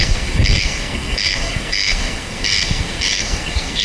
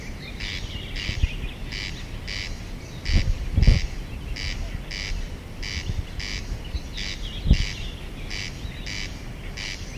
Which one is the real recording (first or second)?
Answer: second